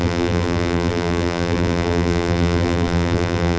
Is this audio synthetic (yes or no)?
yes